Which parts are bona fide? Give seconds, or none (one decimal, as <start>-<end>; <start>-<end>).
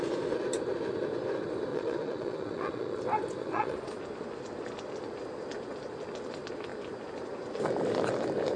0.0-1.7; 3.0-3.4; 4.0-8.6